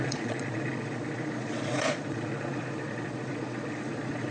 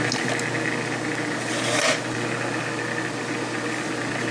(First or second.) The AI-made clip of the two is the first